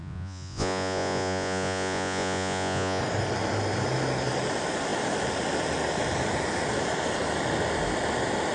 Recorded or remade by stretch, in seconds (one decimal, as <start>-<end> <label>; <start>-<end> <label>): 0.0-3.0 remade; 3.0-8.5 recorded